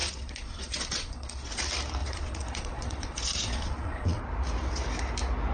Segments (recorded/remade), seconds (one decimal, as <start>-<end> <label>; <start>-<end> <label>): 0.0-1.6 remade; 1.6-2.0 recorded; 2.0-4.2 remade; 4.2-5.5 recorded

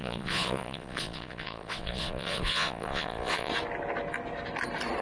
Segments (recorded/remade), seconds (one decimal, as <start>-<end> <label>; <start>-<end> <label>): 0.0-3.5 remade; 3.5-5.0 recorded

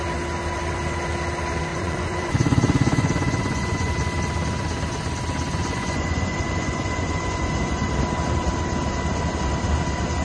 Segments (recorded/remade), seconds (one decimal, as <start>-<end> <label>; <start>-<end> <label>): 0.0-1.7 recorded; 1.7-3.9 remade; 3.9-5.5 recorded; 5.5-7.9 remade; 7.9-10.2 recorded

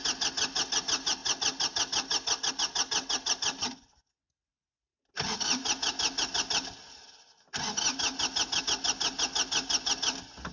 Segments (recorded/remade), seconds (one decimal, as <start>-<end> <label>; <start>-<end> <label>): 0.0-10.5 recorded

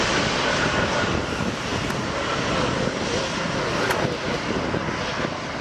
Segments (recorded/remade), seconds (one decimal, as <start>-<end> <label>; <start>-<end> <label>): 0.0-5.6 recorded